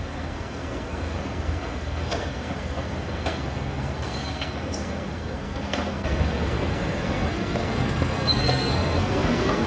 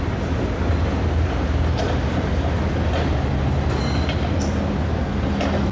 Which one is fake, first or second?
first